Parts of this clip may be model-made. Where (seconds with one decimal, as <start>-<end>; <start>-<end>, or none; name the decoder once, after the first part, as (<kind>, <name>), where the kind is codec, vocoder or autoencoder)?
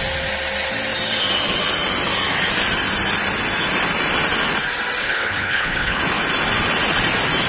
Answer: 5.0-6.0 (codec, HILCodec)